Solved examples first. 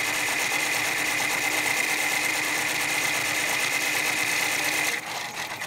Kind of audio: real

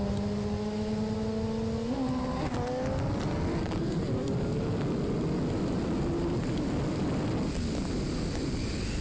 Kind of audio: real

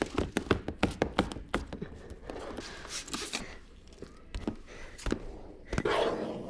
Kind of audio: real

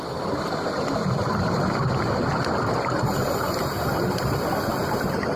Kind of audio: real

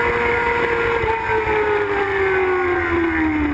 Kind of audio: real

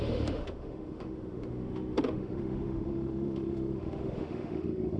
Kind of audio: fake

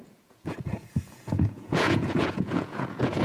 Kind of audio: fake